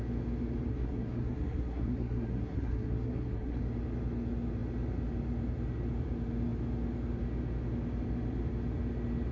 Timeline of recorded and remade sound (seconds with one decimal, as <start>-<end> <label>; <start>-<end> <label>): 0.0-0.7 recorded; 0.7-3.6 remade; 3.6-9.3 recorded